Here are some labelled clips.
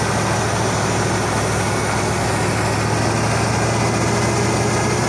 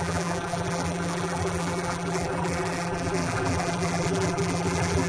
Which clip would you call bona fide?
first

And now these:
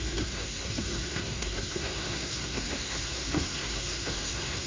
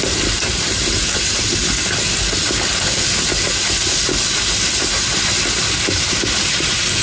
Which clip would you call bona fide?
second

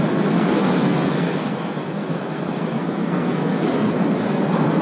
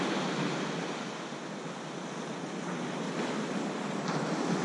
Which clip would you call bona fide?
second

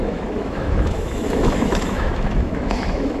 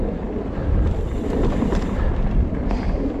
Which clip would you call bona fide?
second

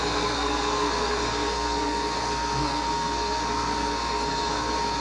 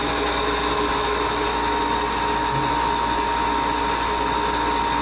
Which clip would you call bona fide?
second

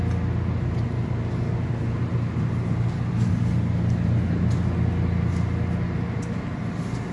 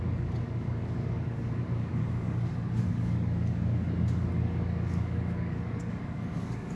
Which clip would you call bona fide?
first